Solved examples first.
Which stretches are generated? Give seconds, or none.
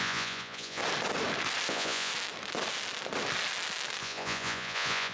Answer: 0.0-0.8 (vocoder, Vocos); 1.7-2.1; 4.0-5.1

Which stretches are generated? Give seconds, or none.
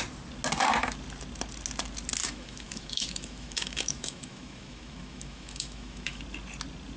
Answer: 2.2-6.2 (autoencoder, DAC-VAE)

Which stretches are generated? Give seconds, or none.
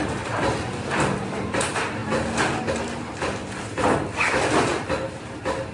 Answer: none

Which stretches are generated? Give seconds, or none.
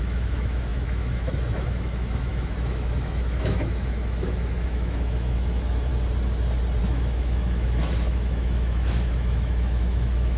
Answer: 0.0-5.9 (autoencoder, DAC-VAE); 6.8-10.4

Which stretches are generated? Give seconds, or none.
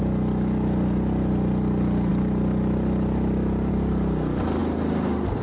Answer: none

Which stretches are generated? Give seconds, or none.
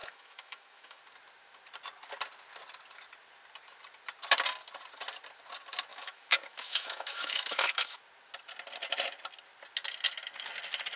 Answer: 0.0-1.0 (autoencoder, DAC-VAE); 5.9-8.0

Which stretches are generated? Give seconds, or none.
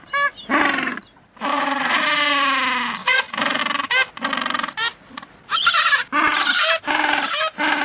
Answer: 1.5-2.4 (vocoder, Vocos); 3.0-3.6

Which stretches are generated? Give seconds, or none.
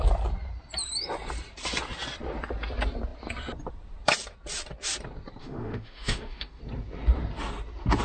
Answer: 5.4-6.6 (autoencoder, DAC-VAE)